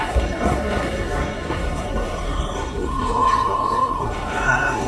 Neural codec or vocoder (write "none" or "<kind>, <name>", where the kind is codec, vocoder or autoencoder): codec, SNAC